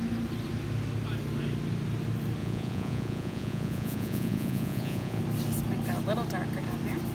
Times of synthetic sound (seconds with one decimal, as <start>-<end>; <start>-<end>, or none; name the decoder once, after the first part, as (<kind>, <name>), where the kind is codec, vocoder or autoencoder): 2.4-5.2 (vocoder, Vocos)